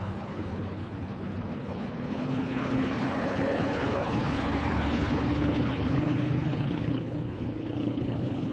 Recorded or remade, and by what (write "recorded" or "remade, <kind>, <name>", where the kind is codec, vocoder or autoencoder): remade, codec, HILCodec